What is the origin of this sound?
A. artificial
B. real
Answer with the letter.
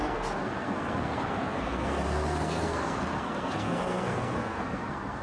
A